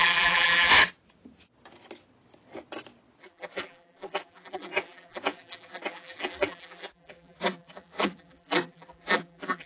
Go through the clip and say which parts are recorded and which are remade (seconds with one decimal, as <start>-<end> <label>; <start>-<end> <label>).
0.0-0.7 remade; 0.7-3.2 recorded; 3.2-9.7 remade